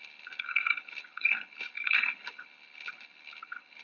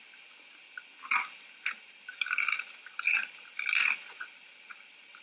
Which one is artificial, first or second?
first